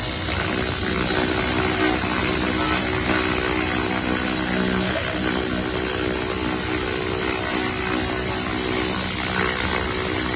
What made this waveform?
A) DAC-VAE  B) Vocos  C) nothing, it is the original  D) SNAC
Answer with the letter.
C